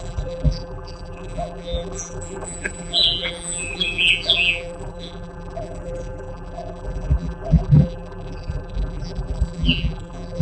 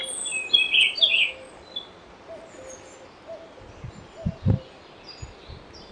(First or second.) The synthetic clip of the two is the first